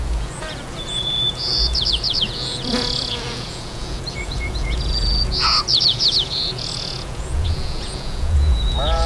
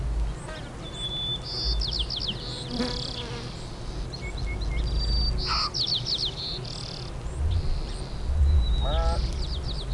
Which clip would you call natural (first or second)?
second